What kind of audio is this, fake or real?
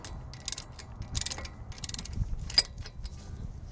real